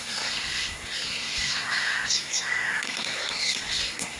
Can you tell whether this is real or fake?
fake